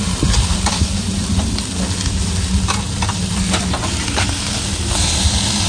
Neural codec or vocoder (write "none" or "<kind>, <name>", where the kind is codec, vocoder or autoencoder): none